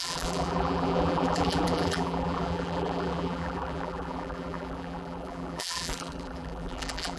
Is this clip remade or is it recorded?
remade